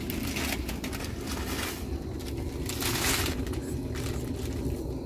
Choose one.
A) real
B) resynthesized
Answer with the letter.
A